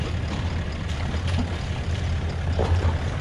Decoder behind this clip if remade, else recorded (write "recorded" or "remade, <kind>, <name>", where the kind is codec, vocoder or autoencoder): recorded